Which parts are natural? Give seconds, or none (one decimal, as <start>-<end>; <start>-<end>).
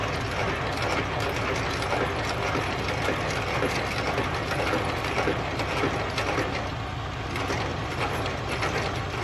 0.0-7.7; 8.5-9.2